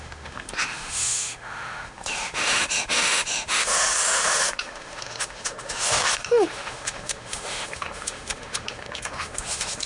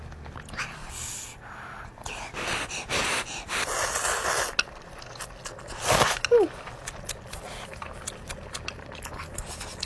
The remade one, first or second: first